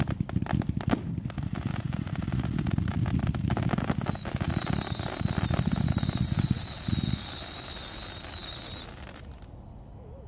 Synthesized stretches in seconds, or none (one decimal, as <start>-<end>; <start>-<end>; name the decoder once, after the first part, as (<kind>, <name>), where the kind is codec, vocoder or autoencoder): none